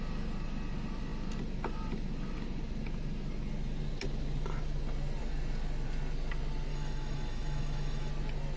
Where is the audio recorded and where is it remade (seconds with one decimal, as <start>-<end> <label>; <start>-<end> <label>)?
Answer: 0.0-6.7 recorded; 6.7-8.1 remade; 8.1-8.6 recorded